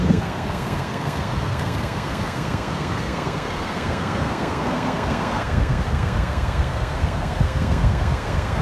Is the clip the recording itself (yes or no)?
no